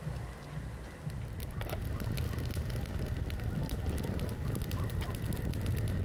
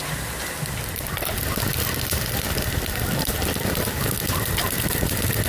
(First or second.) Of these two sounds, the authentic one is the first